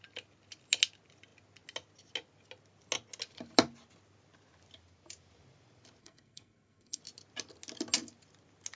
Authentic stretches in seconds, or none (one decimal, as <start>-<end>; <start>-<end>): 0.0-6.0; 7.0-8.8